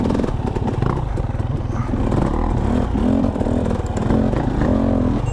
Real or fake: real